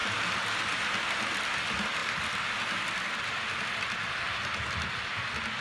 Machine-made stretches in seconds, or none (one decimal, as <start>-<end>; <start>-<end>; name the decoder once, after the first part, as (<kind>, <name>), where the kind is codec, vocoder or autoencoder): 0.0-1.4 (vocoder, BigVGAN v2)